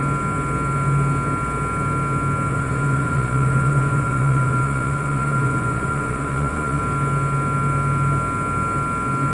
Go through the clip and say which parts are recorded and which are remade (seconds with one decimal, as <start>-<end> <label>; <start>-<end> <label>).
0.0-2.5 recorded; 2.5-6.8 remade; 6.8-9.3 recorded